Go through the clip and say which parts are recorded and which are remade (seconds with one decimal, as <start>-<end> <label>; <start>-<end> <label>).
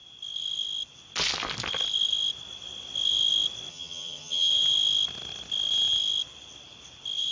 0.0-3.7 recorded; 3.7-4.5 remade; 4.5-7.3 recorded